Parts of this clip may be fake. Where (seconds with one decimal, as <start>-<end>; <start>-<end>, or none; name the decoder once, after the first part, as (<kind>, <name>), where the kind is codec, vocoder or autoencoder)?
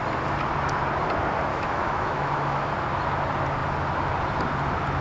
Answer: 1.5-2.7 (autoencoder, DAC-VAE)